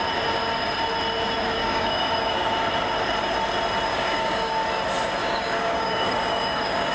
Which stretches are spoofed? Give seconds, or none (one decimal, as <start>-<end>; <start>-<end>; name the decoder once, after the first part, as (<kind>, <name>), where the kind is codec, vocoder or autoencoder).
1.6-2.5 (codec, DAC); 3.9-4.6; 5.2-6.9